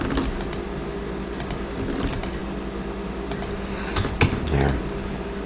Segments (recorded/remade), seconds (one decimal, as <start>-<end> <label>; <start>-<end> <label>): 0.0-5.5 recorded